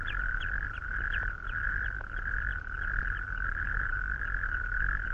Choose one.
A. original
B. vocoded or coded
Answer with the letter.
A